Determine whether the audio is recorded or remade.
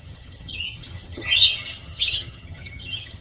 remade